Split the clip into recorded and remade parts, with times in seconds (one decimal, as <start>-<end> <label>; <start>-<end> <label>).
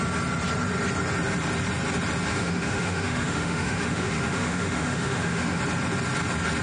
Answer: 0.0-2.3 recorded; 2.3-5.6 remade; 5.6-6.6 recorded